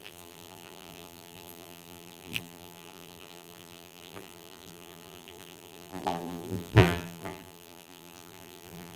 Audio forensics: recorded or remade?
remade